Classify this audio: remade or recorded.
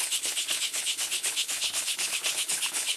remade